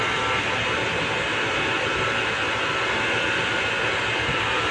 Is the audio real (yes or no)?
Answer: yes